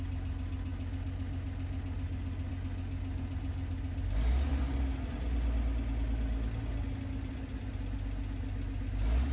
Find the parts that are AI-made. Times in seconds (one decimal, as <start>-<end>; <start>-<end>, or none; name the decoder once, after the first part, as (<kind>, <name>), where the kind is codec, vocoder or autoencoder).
none